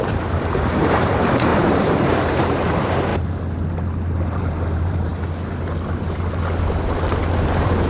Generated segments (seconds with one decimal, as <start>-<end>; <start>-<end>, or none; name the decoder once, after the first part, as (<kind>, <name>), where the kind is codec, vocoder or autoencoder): 0.0-3.1 (vocoder, BigVGAN v2); 4.4-5.1; 7.4-7.9